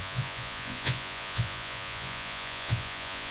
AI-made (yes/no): yes